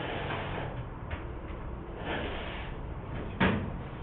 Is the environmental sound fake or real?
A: fake